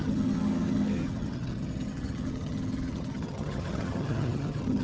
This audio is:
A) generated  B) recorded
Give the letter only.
A